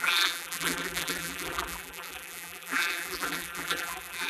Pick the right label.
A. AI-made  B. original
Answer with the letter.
A